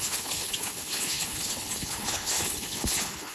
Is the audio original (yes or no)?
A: no